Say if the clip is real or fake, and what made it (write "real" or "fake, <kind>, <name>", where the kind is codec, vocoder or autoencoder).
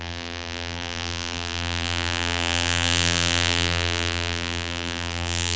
fake, vocoder, BigVGAN v2